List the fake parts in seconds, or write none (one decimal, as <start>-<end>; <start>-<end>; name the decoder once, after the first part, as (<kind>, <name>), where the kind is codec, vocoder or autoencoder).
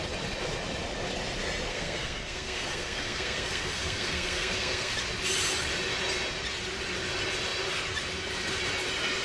1.7-4.9 (codec, SNAC)